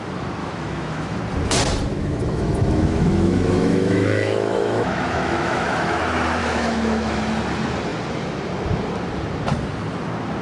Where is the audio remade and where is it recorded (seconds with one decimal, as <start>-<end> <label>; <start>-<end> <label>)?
0.0-0.4 recorded; 0.4-1.2 remade; 1.2-1.9 recorded; 1.9-6.0 remade; 6.0-6.4 recorded; 6.4-7.2 remade; 7.2-10.4 recorded